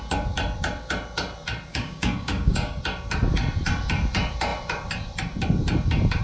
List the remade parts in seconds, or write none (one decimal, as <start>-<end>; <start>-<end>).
1.7-2.8